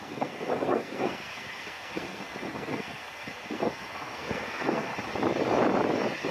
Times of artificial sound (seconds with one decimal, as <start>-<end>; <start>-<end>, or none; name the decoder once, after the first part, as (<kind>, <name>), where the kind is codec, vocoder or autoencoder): 0.0-4.9 (codec, SNAC)

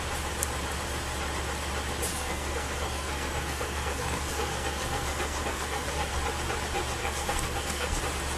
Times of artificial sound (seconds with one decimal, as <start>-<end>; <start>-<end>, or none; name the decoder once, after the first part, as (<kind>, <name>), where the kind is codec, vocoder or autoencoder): 2.1-6.1 (codec, SNAC); 7.0-8.0

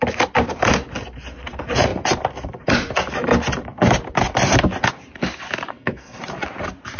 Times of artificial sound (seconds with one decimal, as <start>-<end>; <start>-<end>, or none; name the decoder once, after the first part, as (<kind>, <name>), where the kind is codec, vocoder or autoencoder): 5.7-6.2 (codec, SNAC)

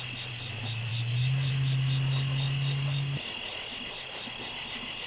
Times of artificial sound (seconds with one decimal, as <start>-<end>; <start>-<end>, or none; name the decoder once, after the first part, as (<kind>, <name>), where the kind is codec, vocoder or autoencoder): none

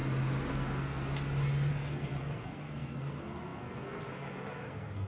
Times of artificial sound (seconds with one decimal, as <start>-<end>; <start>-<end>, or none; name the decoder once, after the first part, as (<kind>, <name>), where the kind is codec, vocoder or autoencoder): 0.5-1.0 (codec, SNAC); 1.7-5.1

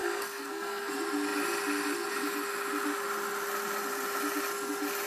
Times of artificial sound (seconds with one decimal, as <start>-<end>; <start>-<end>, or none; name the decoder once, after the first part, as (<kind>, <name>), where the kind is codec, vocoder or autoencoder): 0.0-0.9 (codec, SNAC)

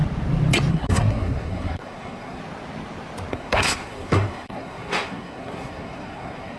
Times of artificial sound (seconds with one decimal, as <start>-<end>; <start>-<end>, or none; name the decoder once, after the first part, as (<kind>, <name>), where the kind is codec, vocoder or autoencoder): 0.7-2.4 (codec, SNAC); 3.3-6.6